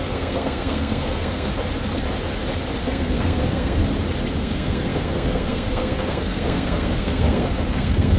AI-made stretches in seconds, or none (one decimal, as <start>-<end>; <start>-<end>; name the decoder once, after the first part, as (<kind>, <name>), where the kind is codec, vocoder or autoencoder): 0.0-1.5 (codec, SNAC); 2.8-3.8; 4.4-8.2